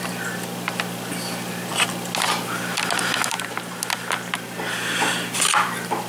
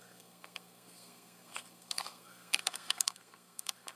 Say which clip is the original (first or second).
first